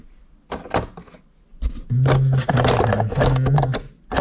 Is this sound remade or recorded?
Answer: recorded